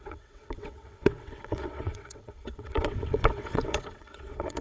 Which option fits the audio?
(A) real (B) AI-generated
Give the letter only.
B